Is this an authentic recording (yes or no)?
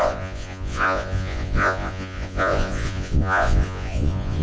no